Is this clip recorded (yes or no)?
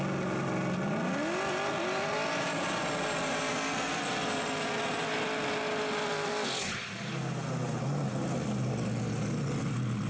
yes